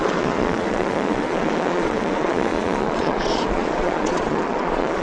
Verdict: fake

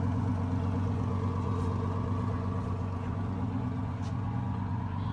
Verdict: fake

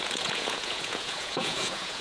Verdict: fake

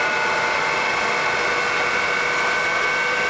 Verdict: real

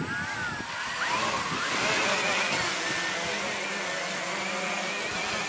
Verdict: real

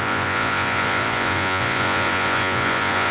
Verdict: fake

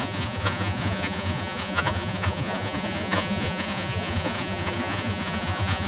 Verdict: fake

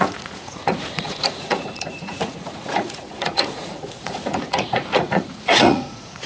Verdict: fake